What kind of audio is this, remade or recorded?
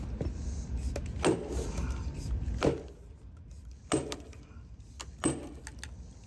recorded